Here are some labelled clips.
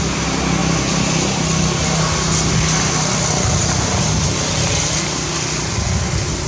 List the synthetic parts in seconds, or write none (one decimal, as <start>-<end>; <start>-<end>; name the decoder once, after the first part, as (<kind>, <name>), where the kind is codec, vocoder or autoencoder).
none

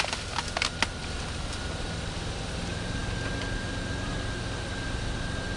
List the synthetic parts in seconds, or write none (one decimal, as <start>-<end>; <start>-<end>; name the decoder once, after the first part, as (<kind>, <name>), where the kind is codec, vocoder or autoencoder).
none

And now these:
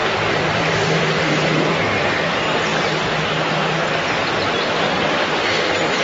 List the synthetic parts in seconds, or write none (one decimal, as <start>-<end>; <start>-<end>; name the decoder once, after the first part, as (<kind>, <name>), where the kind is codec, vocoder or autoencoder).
0.0-2.2 (vocoder, BigVGAN v2)

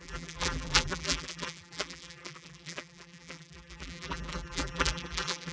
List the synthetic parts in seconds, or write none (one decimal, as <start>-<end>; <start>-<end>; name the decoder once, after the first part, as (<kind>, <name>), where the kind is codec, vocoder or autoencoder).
0.0-5.5 (vocoder, BigVGAN v2)

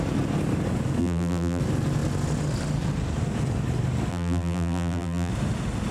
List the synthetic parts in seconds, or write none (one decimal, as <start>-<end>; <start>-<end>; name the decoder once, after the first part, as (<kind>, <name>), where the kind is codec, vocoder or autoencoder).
1.0-1.6 (vocoder, BigVGAN v2); 4.1-5.3